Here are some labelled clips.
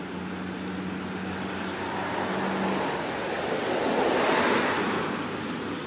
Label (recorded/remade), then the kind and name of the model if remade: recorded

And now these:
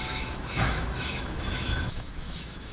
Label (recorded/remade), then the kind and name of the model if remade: remade, autoencoder, DAC-VAE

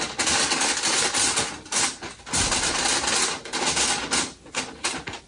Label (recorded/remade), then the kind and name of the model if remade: recorded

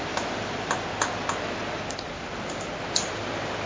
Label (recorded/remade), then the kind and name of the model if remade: recorded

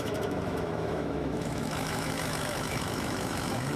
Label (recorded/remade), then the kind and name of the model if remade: remade, autoencoder, DAC-VAE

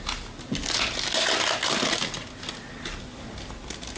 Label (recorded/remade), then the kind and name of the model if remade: recorded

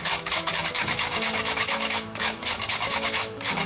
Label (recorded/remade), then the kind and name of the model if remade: remade, autoencoder, DAC-VAE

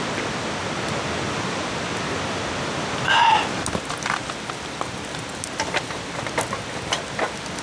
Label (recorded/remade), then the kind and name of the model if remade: recorded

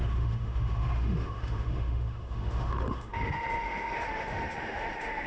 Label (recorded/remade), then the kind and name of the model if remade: remade, autoencoder, DAC-VAE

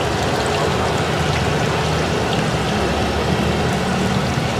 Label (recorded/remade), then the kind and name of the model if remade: recorded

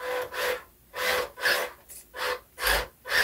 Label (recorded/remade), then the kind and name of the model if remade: recorded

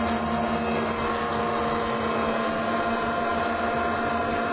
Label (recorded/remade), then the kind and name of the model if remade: recorded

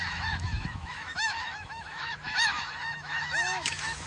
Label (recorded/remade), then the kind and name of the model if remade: remade, autoencoder, DAC-VAE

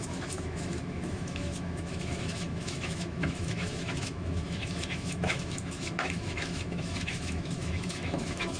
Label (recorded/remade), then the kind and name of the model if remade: remade, autoencoder, DAC-VAE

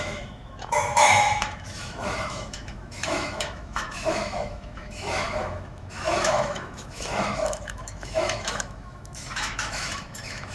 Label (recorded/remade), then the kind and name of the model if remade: remade, autoencoder, DAC-VAE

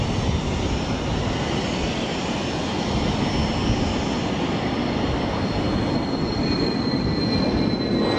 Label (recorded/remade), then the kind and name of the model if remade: recorded